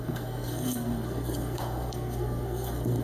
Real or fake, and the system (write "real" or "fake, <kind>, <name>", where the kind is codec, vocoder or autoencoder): fake, codec, SNAC